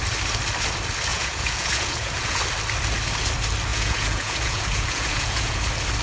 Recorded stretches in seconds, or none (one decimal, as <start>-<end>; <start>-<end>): 0.0-1.1; 2.4-3.7; 5.6-6.0